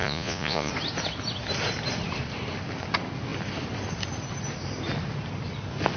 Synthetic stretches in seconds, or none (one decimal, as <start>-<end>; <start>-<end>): 0.0-0.7